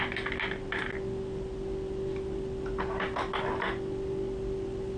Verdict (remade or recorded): recorded